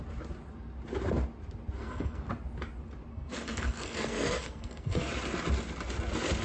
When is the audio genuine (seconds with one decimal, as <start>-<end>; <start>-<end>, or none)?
0.0-1.8; 2.3-3.1; 5.1-6.4